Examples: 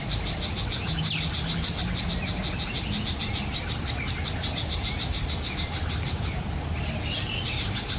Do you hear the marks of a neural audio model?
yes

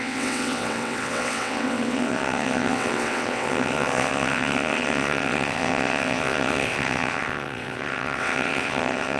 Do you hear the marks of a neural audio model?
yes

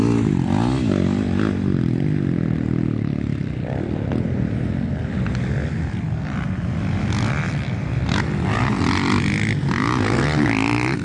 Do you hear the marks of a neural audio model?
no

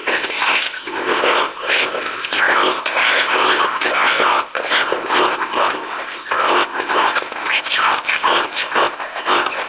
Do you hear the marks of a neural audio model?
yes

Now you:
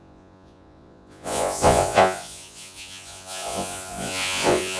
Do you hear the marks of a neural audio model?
yes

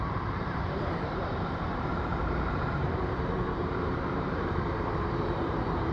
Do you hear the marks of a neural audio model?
yes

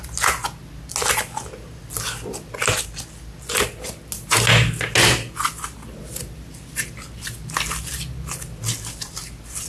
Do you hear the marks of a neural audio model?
no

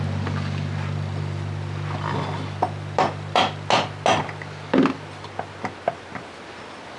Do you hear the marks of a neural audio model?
no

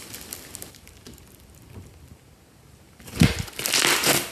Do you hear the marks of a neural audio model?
no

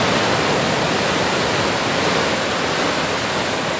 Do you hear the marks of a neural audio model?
no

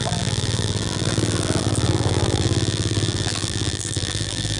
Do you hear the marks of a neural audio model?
yes